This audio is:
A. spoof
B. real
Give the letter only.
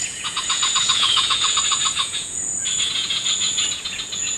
A